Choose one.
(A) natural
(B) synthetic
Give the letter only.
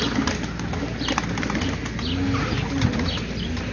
A